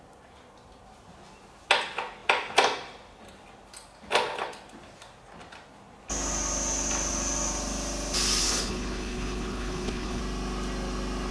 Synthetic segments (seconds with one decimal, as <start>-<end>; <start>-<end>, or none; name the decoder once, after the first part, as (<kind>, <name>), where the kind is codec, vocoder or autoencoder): 8.4-10.2 (codec, HILCodec)